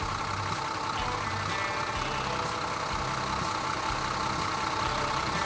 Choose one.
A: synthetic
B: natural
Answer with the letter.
B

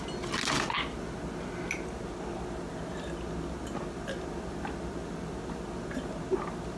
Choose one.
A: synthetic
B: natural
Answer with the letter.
B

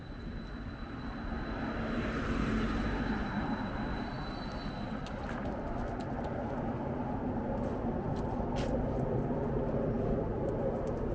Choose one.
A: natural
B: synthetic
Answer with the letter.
A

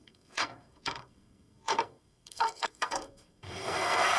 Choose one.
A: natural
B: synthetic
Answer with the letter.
B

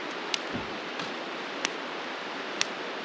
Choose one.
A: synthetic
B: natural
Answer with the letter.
B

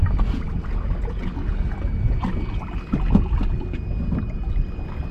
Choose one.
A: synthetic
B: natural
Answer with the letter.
B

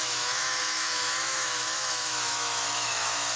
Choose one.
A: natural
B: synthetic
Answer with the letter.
B